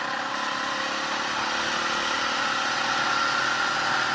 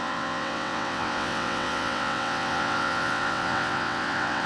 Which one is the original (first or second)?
first